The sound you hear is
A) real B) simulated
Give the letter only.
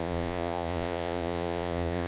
B